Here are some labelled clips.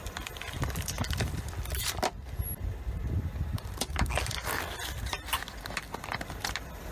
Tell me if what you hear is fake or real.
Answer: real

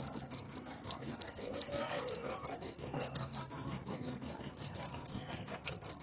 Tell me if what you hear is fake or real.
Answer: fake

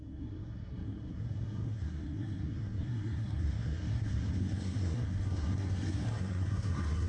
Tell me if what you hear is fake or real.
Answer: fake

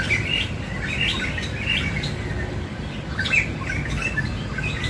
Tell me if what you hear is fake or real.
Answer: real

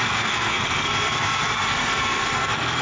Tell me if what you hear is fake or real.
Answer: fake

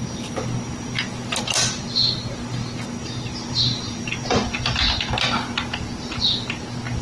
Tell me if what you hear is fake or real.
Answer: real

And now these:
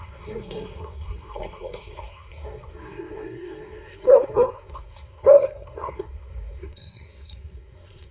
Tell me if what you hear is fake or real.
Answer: fake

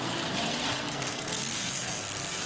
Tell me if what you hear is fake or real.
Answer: fake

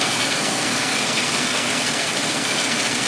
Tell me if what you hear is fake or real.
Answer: fake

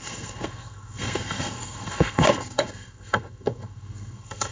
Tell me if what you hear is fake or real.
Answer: fake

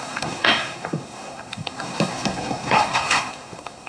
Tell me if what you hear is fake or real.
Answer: fake